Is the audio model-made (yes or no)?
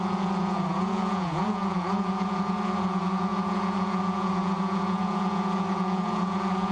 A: yes